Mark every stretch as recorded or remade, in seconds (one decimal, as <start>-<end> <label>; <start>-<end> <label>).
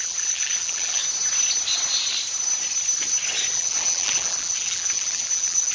0.0-1.0 remade; 1.0-3.5 recorded; 3.5-5.7 remade